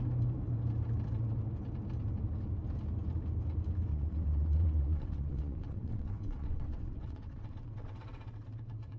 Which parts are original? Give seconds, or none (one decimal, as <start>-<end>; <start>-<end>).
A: 0.0-3.9

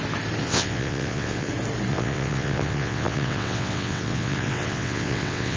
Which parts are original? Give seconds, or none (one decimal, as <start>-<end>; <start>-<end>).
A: 0.0-0.4; 1.5-1.9

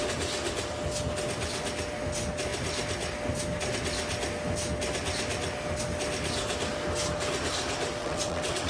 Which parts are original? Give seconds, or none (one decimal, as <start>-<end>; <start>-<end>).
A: 0.0-8.0

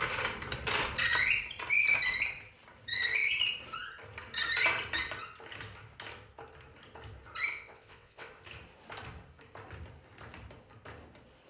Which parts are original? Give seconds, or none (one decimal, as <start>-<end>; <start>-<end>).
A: 0.0-7.5; 8.3-11.5